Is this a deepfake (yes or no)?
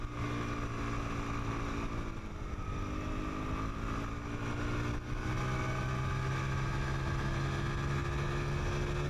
no